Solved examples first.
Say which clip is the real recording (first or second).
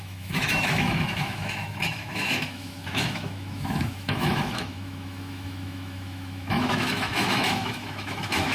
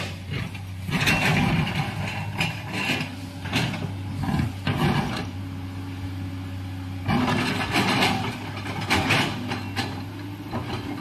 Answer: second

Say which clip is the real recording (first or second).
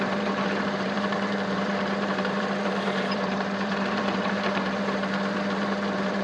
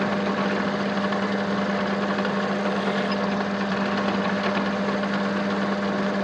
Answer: second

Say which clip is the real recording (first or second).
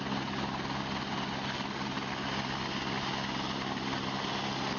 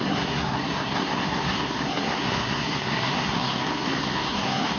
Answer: first